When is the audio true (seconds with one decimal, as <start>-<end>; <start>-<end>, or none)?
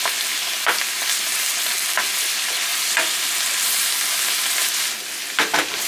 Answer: 0.0-5.9